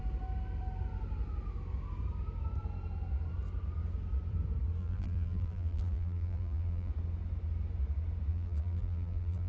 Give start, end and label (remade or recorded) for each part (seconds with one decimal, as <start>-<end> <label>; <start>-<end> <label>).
0.0-4.8 recorded; 4.8-6.9 remade; 6.9-8.3 recorded; 8.3-9.5 remade